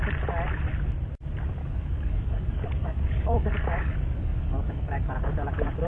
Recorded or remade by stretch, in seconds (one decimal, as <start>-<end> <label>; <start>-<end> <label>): 0.0-1.6 recorded; 1.6-5.1 remade; 5.1-5.9 recorded